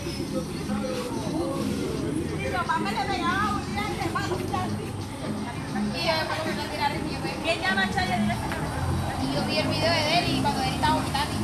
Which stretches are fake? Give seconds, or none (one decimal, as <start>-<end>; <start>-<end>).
none